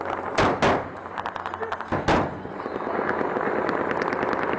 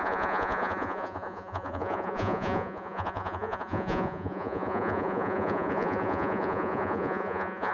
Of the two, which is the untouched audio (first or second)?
first